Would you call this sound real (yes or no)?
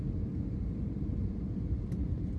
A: no